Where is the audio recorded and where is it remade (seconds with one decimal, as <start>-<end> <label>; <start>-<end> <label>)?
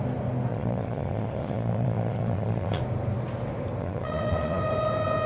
0.0-0.5 recorded; 0.5-2.8 remade; 2.8-3.8 recorded; 3.8-4.6 remade; 4.6-5.3 recorded